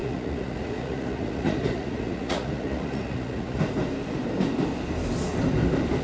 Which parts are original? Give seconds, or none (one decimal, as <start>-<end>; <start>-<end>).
3.6-6.0